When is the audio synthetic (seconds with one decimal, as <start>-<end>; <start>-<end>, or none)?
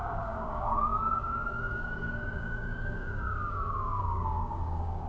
0.0-5.1